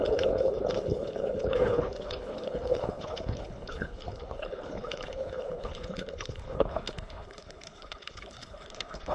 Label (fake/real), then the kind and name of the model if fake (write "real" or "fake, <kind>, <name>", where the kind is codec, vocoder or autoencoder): fake, codec, HILCodec